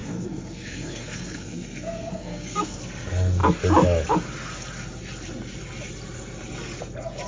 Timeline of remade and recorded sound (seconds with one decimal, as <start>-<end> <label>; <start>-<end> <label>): 0.0-2.8 remade; 2.8-7.3 recorded